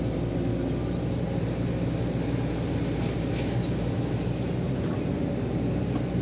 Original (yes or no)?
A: yes